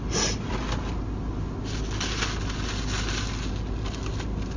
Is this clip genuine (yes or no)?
yes